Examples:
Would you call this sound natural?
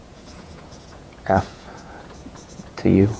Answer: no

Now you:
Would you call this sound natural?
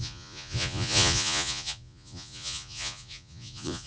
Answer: no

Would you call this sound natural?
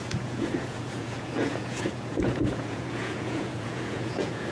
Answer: no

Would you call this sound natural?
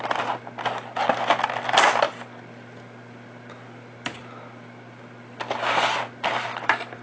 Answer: yes